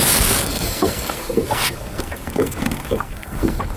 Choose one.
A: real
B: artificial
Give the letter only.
B